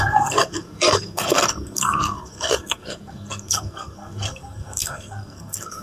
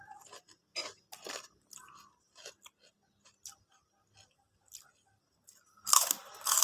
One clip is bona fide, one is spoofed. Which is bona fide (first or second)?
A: second